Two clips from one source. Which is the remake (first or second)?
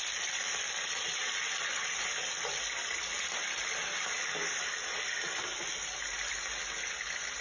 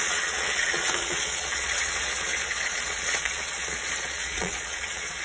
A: second